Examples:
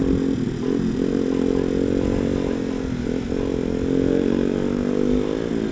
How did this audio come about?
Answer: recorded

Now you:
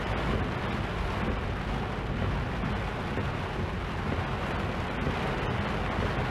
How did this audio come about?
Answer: recorded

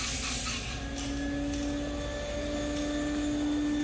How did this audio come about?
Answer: recorded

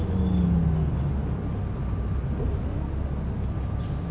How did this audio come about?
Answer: recorded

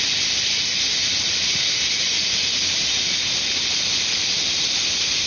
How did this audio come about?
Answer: recorded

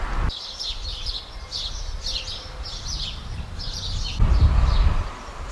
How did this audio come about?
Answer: recorded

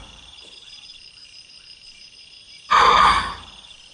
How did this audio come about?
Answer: remade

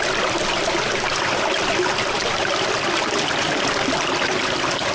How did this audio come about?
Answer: recorded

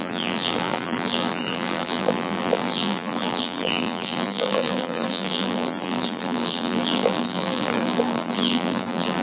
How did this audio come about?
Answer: remade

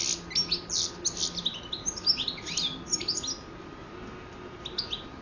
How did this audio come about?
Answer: recorded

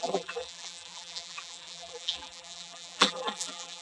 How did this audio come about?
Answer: remade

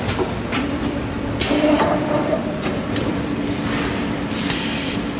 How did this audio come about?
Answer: remade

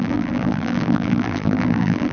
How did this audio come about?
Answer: remade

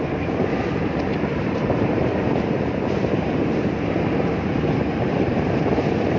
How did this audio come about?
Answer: remade